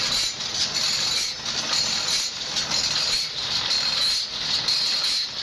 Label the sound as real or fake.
real